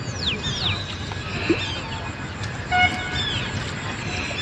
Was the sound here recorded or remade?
recorded